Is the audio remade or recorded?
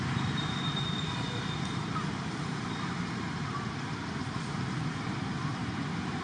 remade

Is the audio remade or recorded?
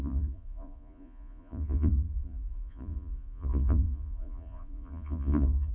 remade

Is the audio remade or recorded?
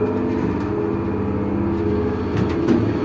recorded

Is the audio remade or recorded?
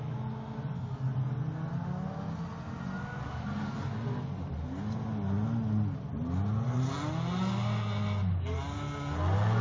recorded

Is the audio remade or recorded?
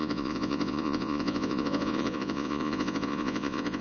remade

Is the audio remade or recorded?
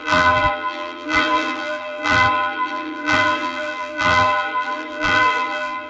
remade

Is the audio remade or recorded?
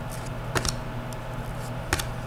recorded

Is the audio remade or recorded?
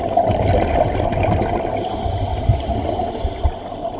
recorded